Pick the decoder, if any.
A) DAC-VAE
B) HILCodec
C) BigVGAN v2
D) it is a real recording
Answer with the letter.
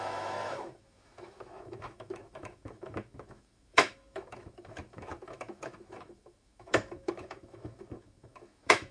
A